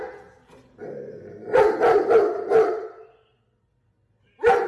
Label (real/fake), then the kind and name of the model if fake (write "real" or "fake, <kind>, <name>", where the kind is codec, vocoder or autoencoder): real